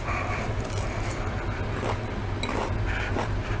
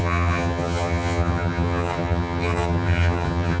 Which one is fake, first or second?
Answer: second